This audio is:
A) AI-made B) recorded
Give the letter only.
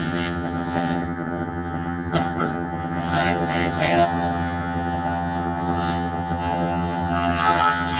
A